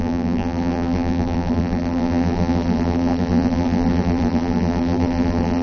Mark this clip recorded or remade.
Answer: remade